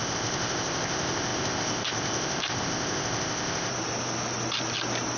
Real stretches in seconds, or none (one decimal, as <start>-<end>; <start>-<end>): 3.7-5.2